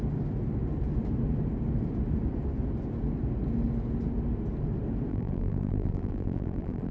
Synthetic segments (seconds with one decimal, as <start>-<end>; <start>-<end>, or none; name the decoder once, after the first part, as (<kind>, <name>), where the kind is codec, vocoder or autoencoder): 5.1-6.9 (vocoder, BigVGAN v2)